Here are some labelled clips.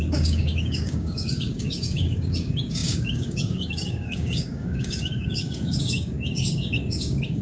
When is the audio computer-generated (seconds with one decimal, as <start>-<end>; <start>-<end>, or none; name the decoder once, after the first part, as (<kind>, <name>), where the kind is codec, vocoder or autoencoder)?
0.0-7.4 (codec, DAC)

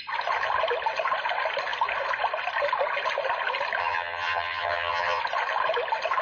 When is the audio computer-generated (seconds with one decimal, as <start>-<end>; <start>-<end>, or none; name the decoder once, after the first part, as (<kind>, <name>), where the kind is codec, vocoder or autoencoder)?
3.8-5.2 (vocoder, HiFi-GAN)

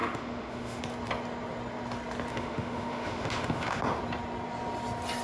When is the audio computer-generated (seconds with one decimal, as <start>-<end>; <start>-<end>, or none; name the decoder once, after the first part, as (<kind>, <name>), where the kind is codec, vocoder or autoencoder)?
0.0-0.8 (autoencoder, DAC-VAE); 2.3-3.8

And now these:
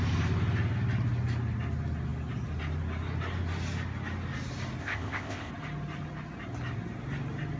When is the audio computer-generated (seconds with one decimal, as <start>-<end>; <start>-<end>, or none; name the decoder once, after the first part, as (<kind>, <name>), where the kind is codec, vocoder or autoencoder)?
4.8-5.5 (codec, ZipCodec)

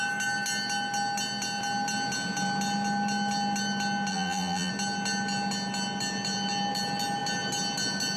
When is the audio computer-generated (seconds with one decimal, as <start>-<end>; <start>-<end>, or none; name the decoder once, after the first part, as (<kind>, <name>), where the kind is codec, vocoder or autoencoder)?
4.1-4.7 (vocoder, BigVGAN v2)

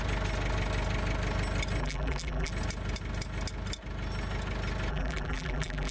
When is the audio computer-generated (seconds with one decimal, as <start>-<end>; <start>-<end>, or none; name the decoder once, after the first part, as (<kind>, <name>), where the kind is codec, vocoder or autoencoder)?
1.8-2.5 (vocoder, BigVGAN v2); 4.9-5.9

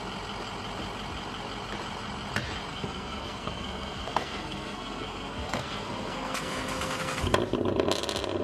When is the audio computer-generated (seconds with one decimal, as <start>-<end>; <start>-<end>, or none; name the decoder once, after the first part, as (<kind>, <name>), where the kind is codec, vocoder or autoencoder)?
2.7-7.2 (codec, SNAC)